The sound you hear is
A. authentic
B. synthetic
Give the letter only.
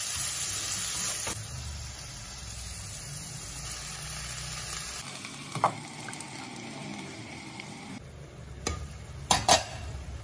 A